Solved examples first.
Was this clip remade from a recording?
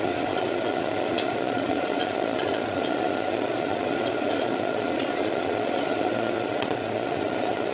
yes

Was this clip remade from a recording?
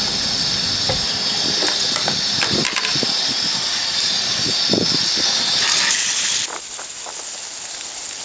no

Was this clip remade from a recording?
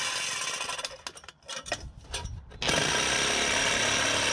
no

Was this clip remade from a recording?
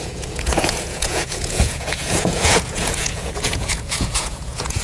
yes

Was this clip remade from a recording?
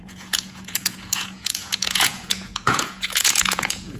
yes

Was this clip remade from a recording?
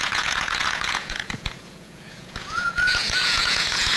yes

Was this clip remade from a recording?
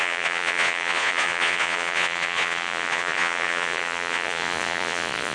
yes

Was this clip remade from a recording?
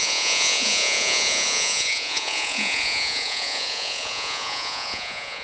yes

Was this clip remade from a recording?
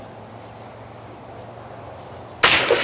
no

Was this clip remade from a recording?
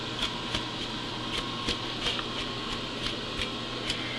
no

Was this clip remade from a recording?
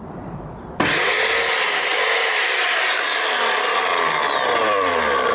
no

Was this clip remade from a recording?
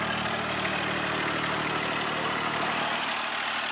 no